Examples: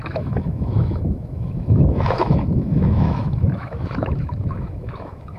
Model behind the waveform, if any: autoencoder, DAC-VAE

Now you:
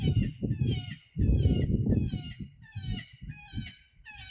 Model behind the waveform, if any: none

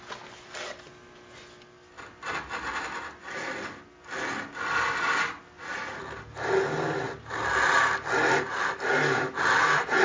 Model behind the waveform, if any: none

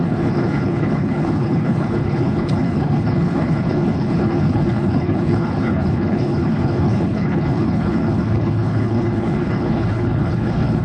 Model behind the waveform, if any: codec, HILCodec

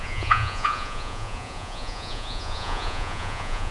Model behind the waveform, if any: vocoder, Vocos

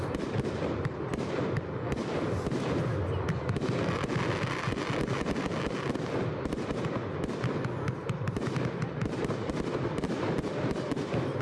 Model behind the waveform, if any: none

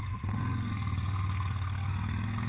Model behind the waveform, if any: codec, SNAC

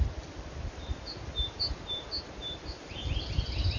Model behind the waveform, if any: none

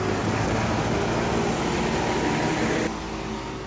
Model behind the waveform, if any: none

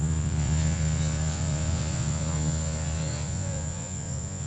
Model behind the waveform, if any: vocoder, Vocos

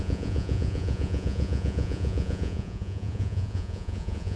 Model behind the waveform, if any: vocoder, Vocos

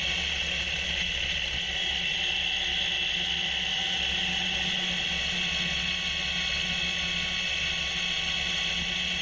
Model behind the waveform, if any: none